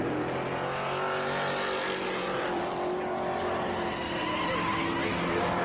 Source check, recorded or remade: recorded